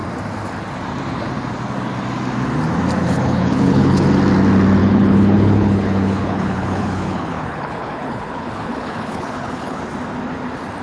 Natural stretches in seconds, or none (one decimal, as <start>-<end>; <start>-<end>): 0.0-3.0; 4.0-4.8; 9.8-10.8